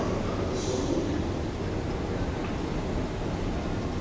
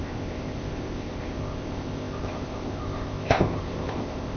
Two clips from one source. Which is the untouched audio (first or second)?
first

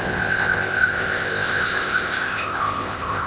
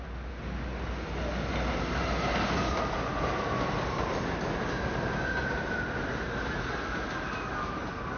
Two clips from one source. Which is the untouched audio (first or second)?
second